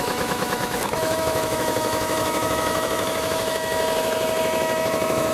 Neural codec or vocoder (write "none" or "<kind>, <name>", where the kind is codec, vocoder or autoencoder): autoencoder, DAC-VAE